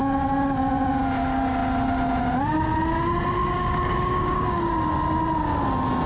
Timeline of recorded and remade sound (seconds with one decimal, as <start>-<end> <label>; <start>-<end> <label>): 0.0-3.4 recorded; 3.4-4.7 remade; 4.7-6.1 recorded